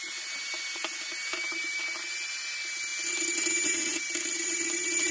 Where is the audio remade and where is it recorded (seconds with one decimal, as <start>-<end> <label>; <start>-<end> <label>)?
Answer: 0.0-1.3 recorded; 1.3-1.8 remade; 1.8-3.9 recorded; 3.9-5.1 remade